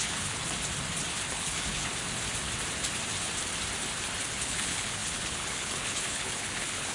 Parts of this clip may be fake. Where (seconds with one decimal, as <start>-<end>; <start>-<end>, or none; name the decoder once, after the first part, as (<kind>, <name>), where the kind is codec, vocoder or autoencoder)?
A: 0.0-0.4 (codec, HILCodec); 1.3-1.9; 4.3-6.9